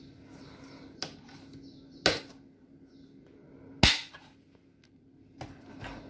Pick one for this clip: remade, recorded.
recorded